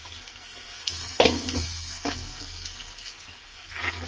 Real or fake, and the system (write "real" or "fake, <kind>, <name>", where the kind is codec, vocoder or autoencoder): fake, codec, SNAC